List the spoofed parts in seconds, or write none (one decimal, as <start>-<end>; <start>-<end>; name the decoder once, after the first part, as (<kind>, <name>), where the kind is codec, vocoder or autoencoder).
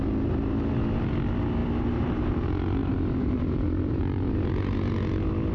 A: 1.6-2.3 (vocoder, BigVGAN v2); 2.8-4.0